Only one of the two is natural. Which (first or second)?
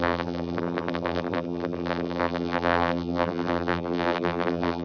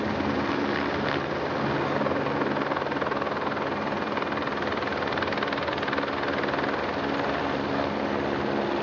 second